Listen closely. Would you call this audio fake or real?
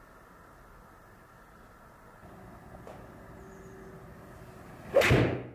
real